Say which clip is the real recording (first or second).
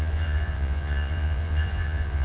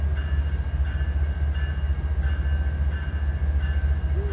second